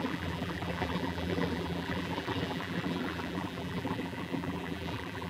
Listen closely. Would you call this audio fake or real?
fake